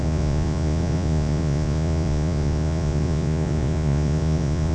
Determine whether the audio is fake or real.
fake